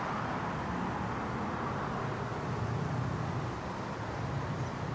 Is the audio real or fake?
real